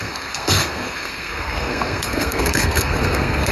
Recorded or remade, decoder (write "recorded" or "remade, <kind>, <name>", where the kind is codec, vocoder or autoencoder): remade, codec, SNAC